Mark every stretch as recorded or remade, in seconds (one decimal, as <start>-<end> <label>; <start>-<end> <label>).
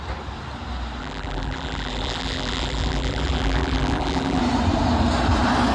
0.0-1.0 recorded; 1.0-4.4 remade; 4.4-5.7 recorded